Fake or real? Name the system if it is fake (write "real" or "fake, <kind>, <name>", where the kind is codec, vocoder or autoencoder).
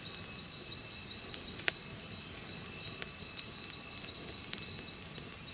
real